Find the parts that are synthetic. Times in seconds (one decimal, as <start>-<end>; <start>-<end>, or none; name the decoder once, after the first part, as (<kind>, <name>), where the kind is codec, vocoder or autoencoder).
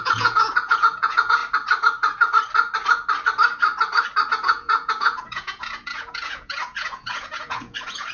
0.0-1.4 (vocoder, Vocos); 4.3-8.1